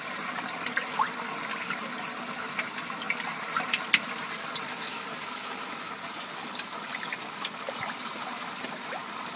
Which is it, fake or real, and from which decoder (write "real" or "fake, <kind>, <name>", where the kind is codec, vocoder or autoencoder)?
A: real